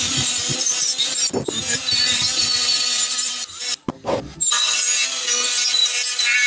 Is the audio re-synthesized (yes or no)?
no